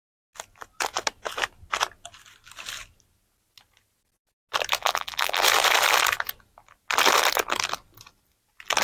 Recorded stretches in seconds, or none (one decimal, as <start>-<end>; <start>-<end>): 0.0-4.8; 5.4-8.8